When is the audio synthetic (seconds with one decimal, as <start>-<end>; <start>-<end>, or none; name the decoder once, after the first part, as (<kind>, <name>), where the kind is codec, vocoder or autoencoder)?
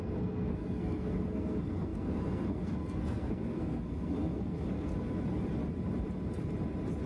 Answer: 0.0-4.9 (codec, SNAC)